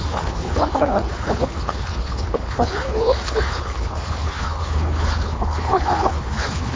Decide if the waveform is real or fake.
fake